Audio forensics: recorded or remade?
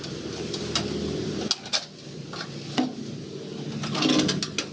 recorded